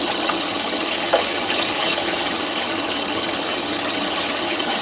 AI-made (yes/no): yes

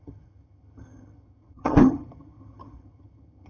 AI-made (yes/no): yes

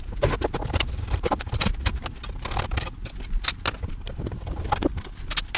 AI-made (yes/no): no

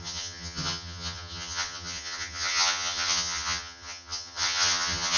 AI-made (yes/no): yes